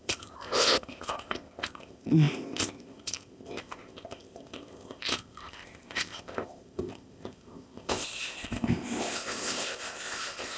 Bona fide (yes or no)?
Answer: no